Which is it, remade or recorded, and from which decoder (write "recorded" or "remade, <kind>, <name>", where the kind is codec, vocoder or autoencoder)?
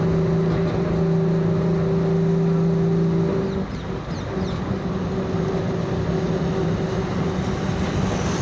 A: recorded